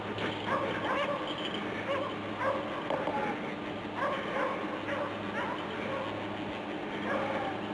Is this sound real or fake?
real